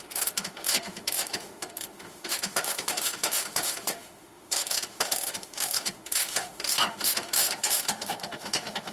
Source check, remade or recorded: remade